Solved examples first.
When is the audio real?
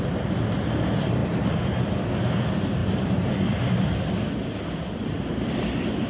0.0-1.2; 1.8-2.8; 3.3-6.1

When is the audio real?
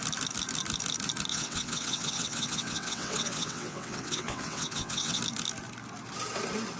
0.0-1.3; 5.2-6.8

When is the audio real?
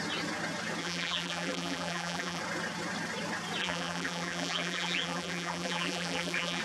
0.0-0.8; 2.4-3.6